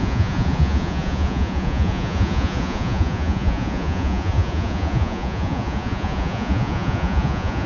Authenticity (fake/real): fake